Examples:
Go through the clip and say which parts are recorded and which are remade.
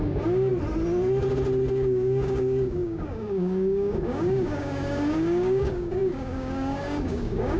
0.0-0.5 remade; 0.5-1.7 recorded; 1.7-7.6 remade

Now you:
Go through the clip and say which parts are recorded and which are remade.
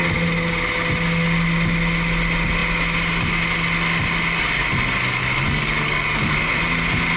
0.0-5.2 recorded; 5.2-6.6 remade; 6.6-7.2 recorded